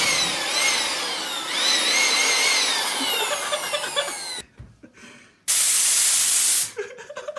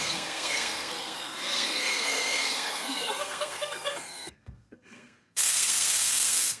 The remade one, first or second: second